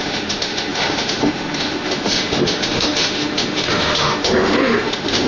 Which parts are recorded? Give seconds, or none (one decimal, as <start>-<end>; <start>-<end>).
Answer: none